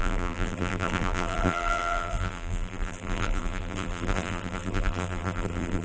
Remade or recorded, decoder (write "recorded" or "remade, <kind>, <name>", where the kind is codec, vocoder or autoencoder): remade, vocoder, BigVGAN v2